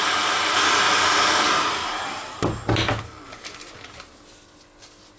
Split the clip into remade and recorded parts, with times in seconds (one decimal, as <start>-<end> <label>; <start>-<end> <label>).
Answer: 0.0-5.2 recorded